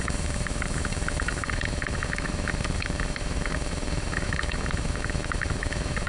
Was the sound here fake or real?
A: fake